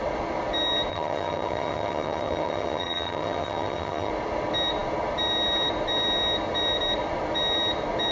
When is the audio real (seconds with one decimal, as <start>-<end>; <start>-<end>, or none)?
0.0-0.9; 4.1-8.1